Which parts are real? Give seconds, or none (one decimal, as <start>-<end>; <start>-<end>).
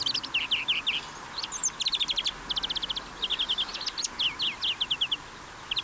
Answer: 0.0-5.8